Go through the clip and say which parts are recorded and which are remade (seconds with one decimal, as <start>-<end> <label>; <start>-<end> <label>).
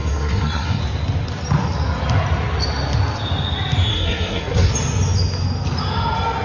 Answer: 0.0-0.8 remade; 0.8-3.9 recorded; 3.9-4.7 remade; 4.7-6.4 recorded